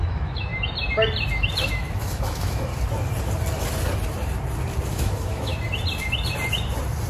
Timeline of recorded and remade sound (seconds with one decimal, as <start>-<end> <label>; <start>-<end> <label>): 0.0-0.5 remade; 0.5-1.7 recorded; 1.7-2.7 remade; 2.7-4.9 recorded; 4.9-5.5 remade; 5.5-7.1 recorded